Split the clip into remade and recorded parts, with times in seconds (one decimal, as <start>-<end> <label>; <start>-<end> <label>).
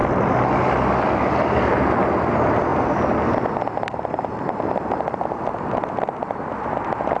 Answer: 0.0-7.2 recorded